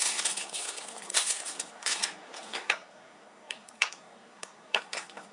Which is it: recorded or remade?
remade